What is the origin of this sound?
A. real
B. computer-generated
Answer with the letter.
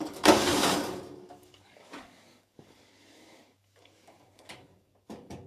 B